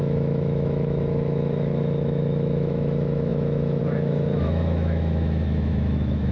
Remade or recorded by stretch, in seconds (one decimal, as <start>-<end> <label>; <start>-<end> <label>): 0.0-6.3 remade